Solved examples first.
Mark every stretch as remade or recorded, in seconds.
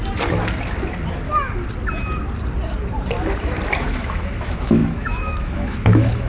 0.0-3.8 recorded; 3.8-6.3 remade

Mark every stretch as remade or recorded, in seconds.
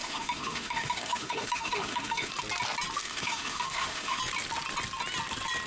0.0-2.3 remade; 2.3-3.0 recorded; 3.0-4.2 remade; 4.2-5.7 recorded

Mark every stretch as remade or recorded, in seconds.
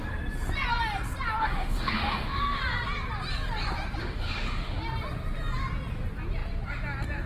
0.0-1.4 recorded; 1.4-2.6 remade; 2.6-4.0 recorded; 4.0-4.8 remade; 4.8-7.3 recorded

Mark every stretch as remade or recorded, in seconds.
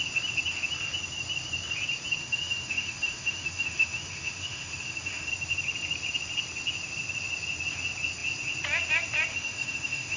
0.0-2.2 recorded; 2.2-5.3 remade; 5.3-9.3 recorded; 9.3-10.2 remade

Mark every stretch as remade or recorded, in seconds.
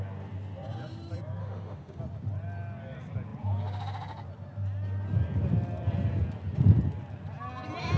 0.0-1.4 recorded; 1.4-2.0 remade; 2.0-8.0 recorded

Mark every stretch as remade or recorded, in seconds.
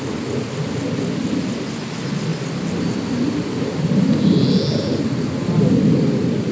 0.0-6.5 recorded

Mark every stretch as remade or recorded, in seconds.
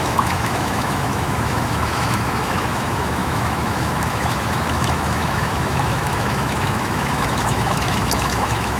0.0-8.8 remade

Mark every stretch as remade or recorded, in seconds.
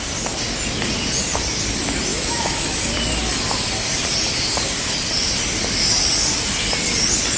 0.0-2.1 recorded; 2.1-2.9 remade; 2.9-7.4 recorded